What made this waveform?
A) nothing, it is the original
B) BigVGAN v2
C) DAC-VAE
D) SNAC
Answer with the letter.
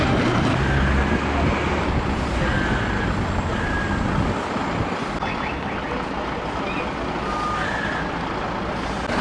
A